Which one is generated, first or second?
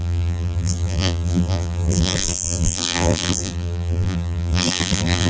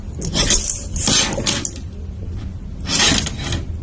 first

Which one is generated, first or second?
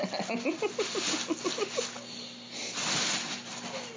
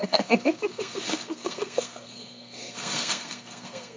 second